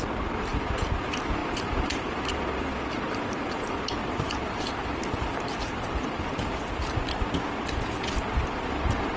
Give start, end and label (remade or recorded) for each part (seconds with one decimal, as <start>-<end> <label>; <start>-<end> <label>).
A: 0.0-1.4 recorded; 1.4-2.3 remade; 2.3-4.0 recorded; 4.0-6.5 remade; 6.5-9.2 recorded